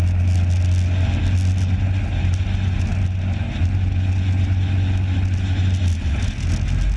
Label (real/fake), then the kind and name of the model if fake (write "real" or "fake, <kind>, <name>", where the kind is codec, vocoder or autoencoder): real